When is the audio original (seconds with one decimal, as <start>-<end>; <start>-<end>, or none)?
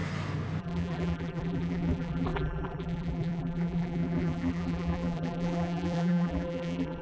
0.0-0.6